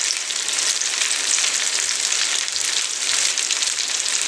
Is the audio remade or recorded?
recorded